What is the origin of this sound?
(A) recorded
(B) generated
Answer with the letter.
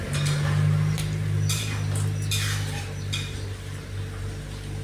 A